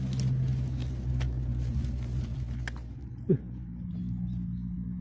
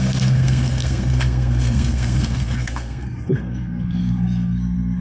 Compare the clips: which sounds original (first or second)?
first